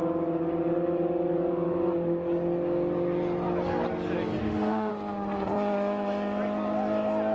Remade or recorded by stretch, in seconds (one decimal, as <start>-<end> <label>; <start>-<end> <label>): 0.0-4.4 recorded; 4.4-4.9 remade; 4.9-7.3 recorded